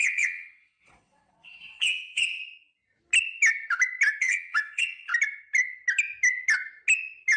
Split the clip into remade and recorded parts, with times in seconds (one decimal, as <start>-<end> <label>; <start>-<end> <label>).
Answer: 0.0-2.4 remade; 2.4-4.2 recorded; 4.2-5.1 remade; 5.1-7.4 recorded